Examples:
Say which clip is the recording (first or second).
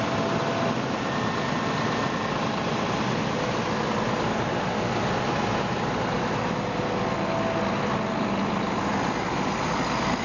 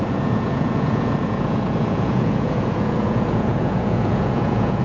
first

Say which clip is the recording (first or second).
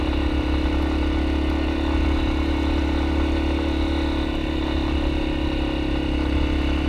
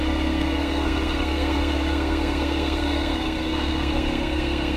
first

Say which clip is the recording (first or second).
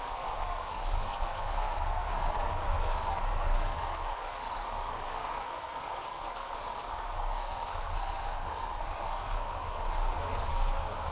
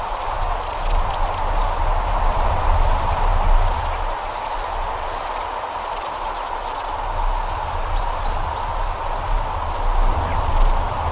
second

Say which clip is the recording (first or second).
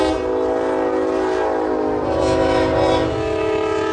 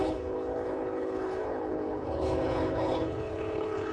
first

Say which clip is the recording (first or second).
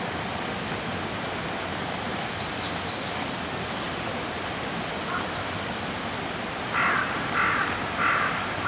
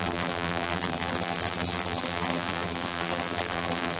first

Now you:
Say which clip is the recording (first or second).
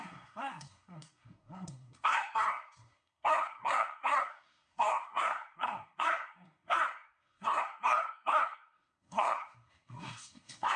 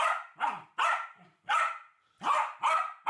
second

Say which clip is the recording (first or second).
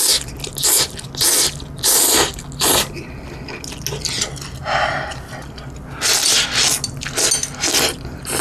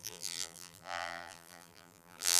first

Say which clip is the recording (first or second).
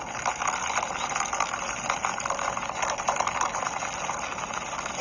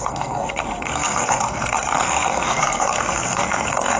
first